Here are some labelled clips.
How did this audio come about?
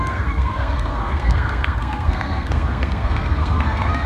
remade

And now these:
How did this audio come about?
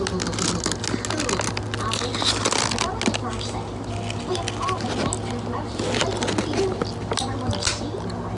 recorded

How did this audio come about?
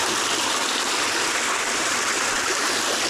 recorded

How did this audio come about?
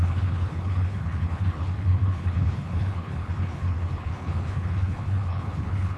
remade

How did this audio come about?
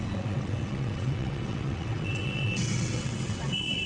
remade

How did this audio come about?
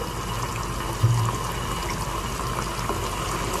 recorded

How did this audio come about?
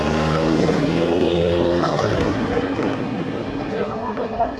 remade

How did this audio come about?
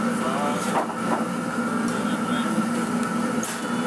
recorded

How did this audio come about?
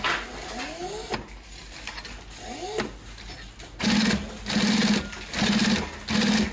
recorded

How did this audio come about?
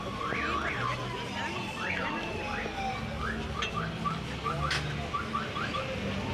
recorded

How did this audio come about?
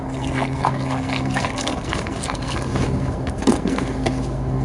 remade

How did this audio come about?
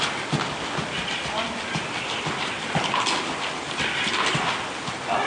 recorded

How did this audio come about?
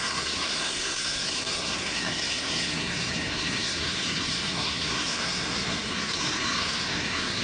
remade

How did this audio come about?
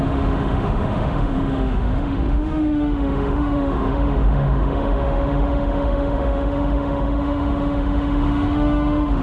remade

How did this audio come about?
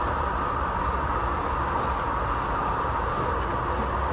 recorded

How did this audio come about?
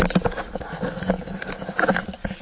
recorded